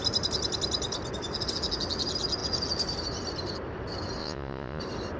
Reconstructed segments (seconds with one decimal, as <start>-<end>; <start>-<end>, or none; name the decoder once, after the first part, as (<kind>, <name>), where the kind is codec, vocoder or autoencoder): 4.2-4.8 (vocoder, Vocos)

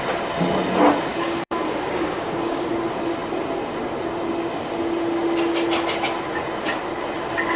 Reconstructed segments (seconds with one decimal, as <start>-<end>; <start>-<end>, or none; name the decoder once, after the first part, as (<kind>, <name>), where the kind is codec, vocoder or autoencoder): 1.1-2.7 (codec, DAC)

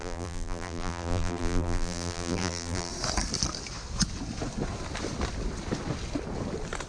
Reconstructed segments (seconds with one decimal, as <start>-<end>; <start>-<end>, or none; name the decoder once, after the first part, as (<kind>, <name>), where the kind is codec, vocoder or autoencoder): 0.0-2.9 (vocoder, BigVGAN v2)

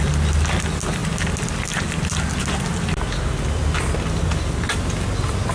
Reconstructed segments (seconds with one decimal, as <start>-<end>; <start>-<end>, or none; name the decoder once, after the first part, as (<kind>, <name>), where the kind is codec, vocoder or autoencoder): none

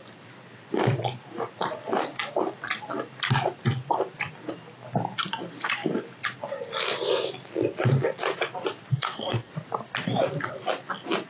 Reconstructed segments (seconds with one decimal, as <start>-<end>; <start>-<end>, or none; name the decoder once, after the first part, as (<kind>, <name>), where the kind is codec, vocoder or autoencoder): 8.9-9.5 (codec, SNAC)

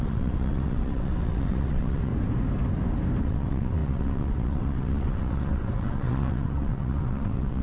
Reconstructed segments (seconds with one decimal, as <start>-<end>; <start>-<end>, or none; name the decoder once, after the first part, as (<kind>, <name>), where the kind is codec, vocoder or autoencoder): 0.0-2.1 (vocoder, WaveNeXt); 3.2-7.6